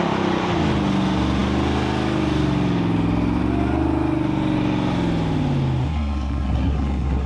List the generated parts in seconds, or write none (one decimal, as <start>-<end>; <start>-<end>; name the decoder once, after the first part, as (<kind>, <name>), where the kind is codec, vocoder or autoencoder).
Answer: 5.8-7.3 (codec, SNAC)